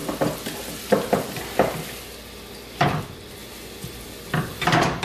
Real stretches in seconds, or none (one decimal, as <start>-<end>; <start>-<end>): 0.0-3.0; 3.4-4.4

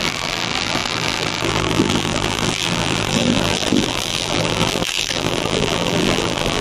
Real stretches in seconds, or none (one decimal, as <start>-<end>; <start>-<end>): none

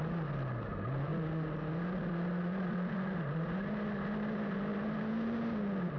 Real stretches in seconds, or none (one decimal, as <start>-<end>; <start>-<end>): 0.0-6.0

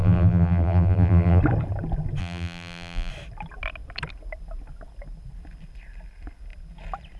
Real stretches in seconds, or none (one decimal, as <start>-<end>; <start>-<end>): 1.4-2.2; 3.1-7.2

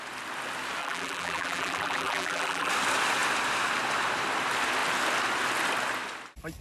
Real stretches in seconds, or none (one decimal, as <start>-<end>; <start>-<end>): 0.0-0.8; 2.7-6.6